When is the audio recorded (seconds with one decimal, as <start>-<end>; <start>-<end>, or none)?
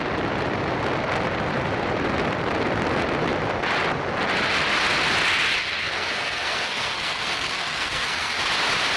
0.0-5.6; 8.4-9.0